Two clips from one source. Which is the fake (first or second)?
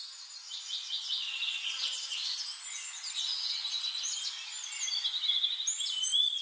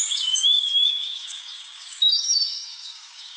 second